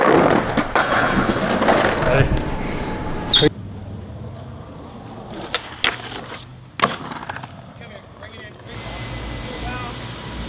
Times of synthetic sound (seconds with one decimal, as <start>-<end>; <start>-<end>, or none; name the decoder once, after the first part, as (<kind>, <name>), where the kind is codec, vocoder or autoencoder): 0.8-1.4 (codec, HILCodec)